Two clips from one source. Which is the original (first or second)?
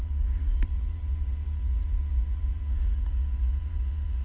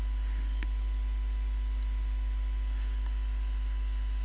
second